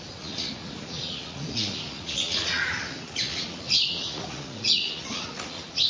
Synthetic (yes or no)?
yes